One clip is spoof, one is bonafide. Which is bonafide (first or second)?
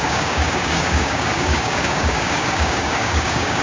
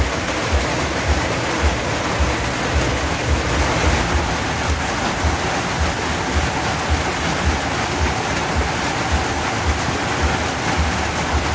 second